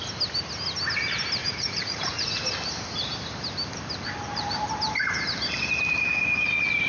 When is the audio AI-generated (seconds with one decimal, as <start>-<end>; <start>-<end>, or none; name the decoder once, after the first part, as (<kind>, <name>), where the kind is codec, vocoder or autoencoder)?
1.4-2.4 (vocoder, Vocos)